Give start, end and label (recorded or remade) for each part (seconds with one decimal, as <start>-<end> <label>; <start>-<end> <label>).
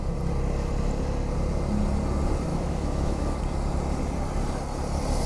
0.0-2.5 recorded; 2.5-3.4 remade; 3.4-5.3 recorded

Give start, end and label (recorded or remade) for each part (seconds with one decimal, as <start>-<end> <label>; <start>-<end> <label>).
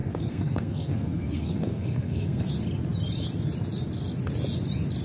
0.0-2.5 remade; 2.5-5.0 recorded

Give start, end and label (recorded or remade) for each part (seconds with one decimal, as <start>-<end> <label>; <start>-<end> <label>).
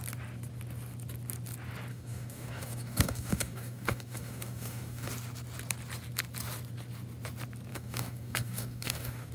0.0-1.9 recorded; 1.9-5.1 remade; 5.1-7.7 recorded; 7.7-9.3 remade